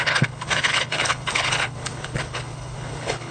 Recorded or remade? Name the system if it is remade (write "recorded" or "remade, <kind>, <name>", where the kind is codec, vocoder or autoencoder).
remade, codec, HILCodec